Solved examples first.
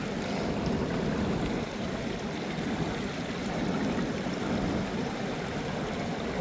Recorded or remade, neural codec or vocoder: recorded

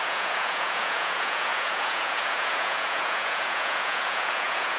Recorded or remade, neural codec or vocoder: remade, vocoder, Vocos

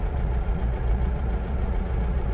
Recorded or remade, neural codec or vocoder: remade, vocoder, Vocos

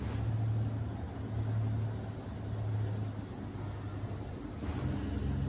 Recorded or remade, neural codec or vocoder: recorded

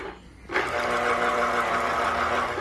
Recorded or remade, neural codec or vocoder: recorded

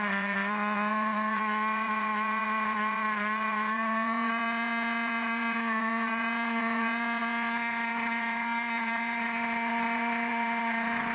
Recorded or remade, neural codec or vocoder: remade, vocoder, Vocos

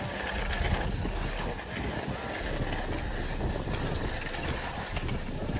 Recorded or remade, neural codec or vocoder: recorded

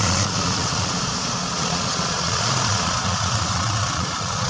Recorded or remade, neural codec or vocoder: remade, vocoder, Vocos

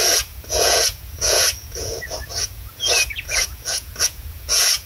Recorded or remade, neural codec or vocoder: remade, vocoder, Vocos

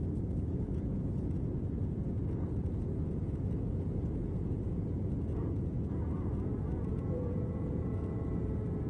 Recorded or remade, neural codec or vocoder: remade, vocoder, Vocos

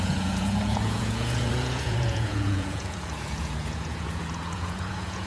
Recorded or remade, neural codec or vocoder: remade, vocoder, Vocos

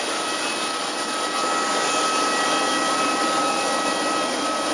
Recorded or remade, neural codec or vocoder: recorded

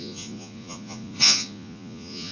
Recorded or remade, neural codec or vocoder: remade, vocoder, Vocos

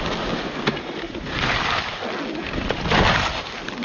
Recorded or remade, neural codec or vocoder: recorded